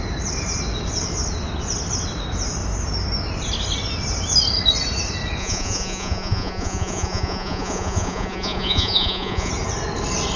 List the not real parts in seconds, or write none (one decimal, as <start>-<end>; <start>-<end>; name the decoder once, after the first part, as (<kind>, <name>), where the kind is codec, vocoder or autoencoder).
5.4-9.5 (vocoder, Vocos)